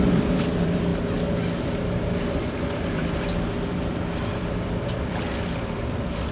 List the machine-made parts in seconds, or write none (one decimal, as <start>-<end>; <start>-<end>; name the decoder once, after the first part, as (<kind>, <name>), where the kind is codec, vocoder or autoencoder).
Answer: 0.0-0.9 (vocoder, BigVGAN v2); 2.5-6.3